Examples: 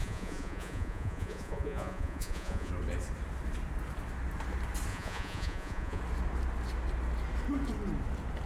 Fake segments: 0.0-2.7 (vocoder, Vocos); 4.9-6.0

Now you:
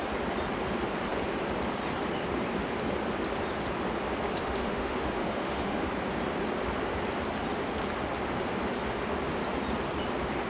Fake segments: 4.4-5.9 (autoencoder, DAC-VAE)

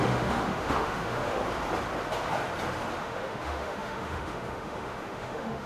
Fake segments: 0.0-1.4 (autoencoder, DAC-VAE); 3.0-5.7

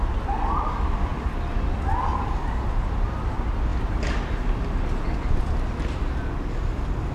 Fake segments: none

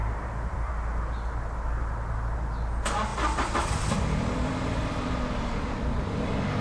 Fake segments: 0.0-0.7 (vocoder, BigVGAN v2); 3.1-5.2

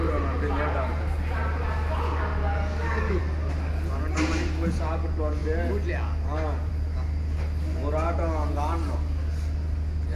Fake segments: 2.4-3.2 (codec, DAC)

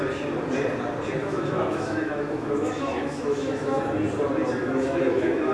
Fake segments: 1.2-3.8 (autoencoder, DAC-VAE); 4.6-5.5

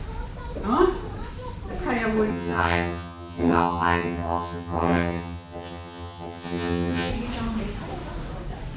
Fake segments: 2.3-7.1 (vocoder, HiFi-GAN)